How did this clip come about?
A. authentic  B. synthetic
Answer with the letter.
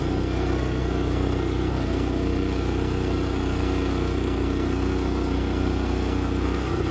B